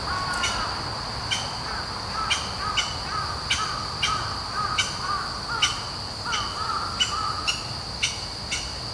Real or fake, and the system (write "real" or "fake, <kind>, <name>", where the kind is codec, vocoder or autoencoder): real